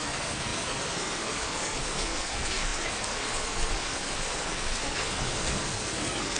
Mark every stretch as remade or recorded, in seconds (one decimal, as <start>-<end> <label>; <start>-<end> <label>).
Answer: 0.0-6.4 remade